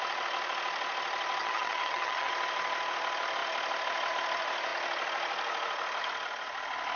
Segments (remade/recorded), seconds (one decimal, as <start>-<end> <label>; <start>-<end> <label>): 0.0-1.4 recorded; 1.4-2.3 remade; 2.3-7.0 recorded